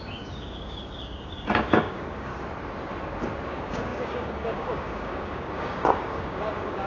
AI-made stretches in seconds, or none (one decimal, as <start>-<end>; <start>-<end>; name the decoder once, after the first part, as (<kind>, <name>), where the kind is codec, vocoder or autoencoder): 0.0-2.3 (codec, DAC); 3.5-6.9